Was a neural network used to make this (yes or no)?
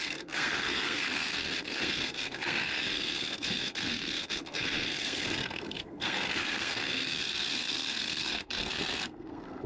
yes